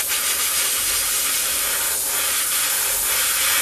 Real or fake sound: real